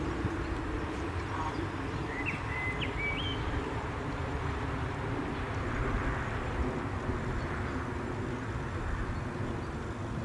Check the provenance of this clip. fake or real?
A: real